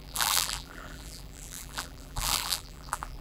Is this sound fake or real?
fake